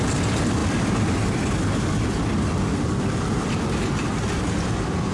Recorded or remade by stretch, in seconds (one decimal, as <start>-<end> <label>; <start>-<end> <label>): 0.0-5.1 recorded